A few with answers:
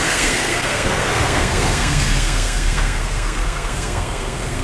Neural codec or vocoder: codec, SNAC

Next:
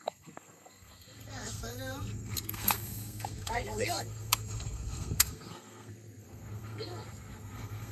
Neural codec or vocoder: codec, SNAC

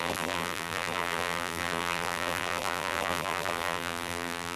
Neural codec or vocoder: vocoder, BigVGAN v2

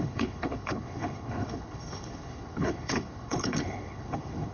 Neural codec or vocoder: codec, HILCodec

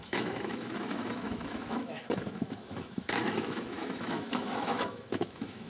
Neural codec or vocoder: autoencoder, DAC-VAE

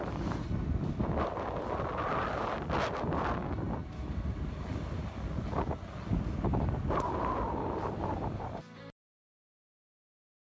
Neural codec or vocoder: none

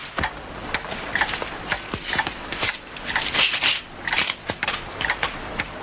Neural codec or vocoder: vocoder, BigVGAN v2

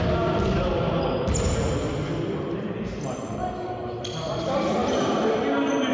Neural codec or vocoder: none